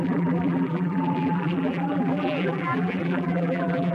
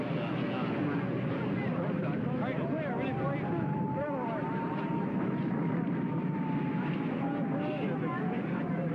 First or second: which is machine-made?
first